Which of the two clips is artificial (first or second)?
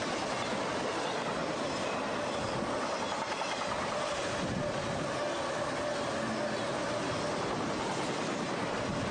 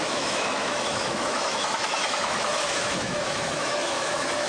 second